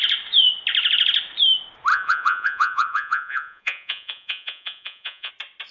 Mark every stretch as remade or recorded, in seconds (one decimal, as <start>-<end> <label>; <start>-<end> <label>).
0.0-1.9 recorded; 1.9-5.3 remade; 5.3-5.7 recorded